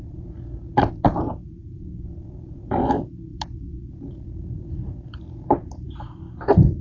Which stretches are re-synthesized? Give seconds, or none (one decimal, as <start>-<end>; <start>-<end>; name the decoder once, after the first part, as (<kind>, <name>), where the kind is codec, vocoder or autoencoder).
0.0-6.8 (vocoder, BigVGAN v2)